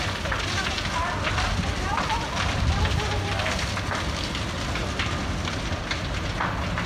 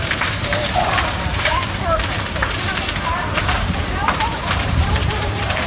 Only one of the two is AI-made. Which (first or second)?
second